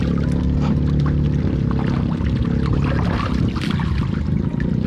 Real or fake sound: real